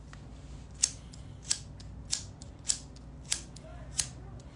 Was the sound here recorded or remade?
recorded